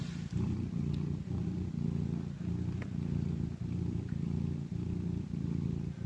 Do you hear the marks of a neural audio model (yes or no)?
no